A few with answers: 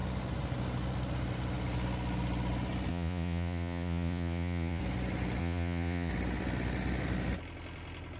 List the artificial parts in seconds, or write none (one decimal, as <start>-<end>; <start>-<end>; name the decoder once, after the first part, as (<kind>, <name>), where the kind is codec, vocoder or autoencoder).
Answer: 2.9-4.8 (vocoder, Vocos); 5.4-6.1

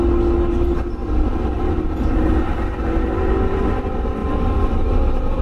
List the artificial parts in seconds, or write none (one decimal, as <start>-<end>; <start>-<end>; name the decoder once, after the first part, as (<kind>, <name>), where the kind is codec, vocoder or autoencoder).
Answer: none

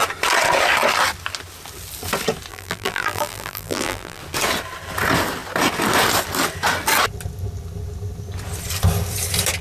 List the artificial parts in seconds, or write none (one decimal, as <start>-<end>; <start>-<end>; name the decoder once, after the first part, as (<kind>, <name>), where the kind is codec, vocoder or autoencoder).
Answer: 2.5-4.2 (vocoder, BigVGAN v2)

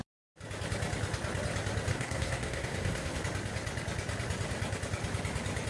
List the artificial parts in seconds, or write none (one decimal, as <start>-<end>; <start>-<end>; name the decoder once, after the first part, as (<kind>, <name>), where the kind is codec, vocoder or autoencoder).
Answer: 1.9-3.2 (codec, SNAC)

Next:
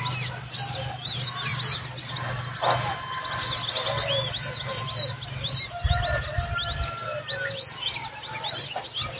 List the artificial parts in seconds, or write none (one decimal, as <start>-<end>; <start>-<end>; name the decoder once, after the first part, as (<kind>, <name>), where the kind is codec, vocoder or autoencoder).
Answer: none